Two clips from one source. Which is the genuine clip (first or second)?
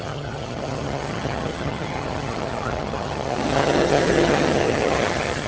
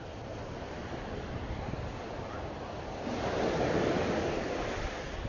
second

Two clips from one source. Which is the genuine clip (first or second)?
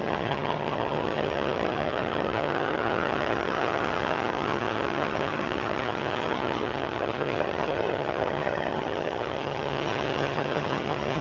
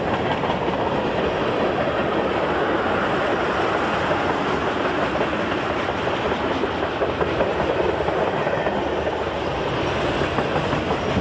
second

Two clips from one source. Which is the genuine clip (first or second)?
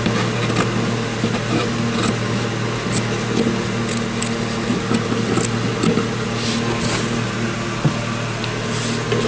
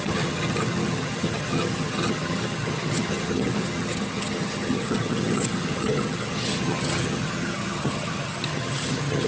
first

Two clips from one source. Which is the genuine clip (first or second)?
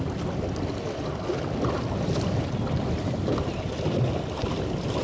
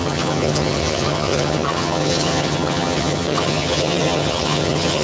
first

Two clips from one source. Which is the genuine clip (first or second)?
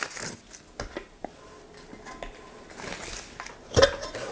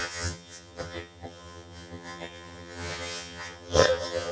first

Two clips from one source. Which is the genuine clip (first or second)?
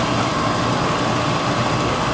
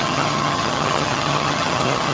first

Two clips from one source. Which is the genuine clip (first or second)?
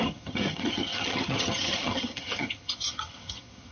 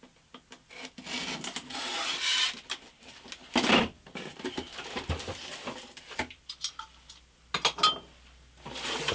second